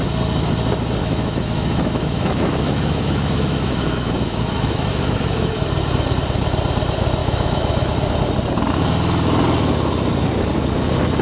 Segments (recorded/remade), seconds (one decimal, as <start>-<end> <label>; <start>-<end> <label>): 0.0-1.0 recorded; 1.0-5.6 remade; 5.6-7.2 recorded; 7.2-7.9 remade; 7.9-11.2 recorded